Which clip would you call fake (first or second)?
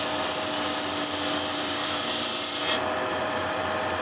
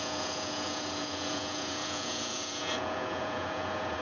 second